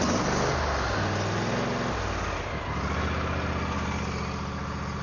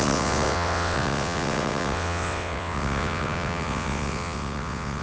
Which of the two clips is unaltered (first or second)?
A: first